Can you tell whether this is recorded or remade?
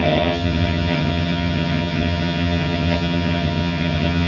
remade